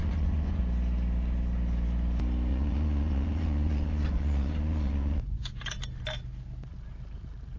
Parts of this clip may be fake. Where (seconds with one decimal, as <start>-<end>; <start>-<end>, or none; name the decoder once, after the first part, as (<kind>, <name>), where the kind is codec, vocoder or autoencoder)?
0.0-0.6 (vocoder, Vocos); 2.5-5.4